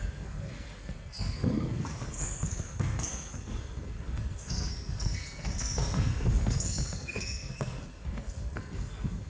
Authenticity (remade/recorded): remade